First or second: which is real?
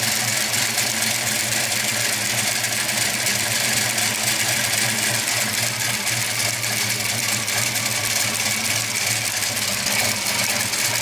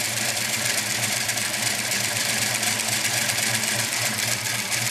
first